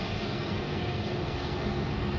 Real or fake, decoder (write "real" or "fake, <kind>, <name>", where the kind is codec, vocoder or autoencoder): fake, codec, SNAC